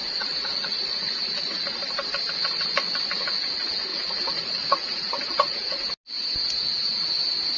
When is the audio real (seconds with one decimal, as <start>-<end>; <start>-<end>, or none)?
1.4-3.9; 5.9-7.6